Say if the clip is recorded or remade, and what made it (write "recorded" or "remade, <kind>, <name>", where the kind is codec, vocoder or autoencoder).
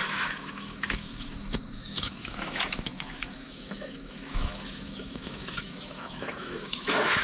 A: remade, autoencoder, DAC-VAE